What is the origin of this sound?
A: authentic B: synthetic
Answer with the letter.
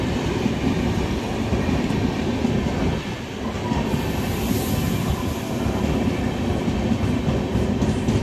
A